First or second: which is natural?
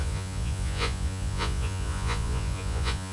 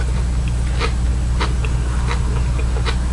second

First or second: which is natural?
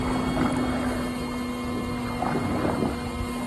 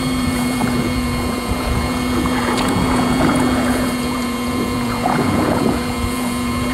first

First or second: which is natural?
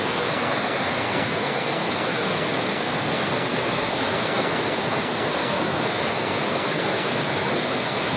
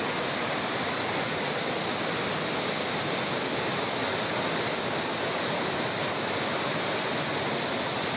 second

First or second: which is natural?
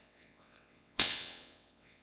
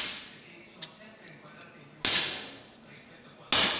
second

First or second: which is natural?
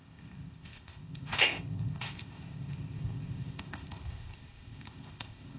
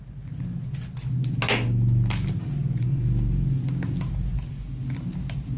second